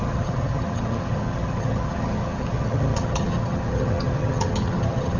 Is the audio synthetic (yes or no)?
yes